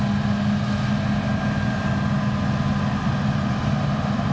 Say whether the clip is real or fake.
real